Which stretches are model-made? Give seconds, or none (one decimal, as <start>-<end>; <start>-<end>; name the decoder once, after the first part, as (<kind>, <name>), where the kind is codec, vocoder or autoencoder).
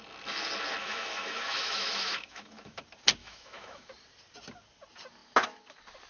0.8-2.8 (autoencoder, DAC-VAE); 3.2-3.9